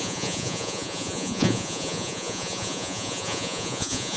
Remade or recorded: remade